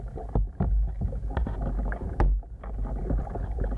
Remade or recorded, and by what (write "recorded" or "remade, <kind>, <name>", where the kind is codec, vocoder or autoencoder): recorded